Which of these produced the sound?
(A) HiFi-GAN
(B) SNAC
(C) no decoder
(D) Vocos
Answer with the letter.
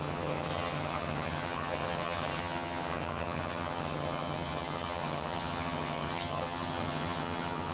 A